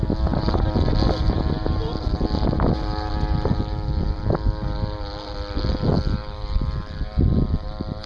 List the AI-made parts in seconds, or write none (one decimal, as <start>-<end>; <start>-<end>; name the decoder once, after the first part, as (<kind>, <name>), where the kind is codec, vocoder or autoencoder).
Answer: none